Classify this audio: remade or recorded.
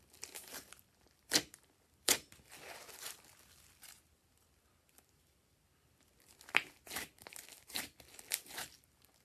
recorded